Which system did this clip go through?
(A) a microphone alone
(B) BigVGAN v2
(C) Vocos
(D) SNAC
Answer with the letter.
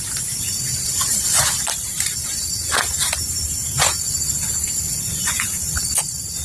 B